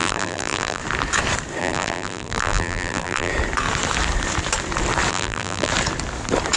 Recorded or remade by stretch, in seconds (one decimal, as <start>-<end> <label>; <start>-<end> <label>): 0.0-0.8 remade; 0.8-1.6 recorded; 1.6-3.3 remade; 3.3-5.1 recorded; 5.1-5.7 remade; 5.7-6.6 recorded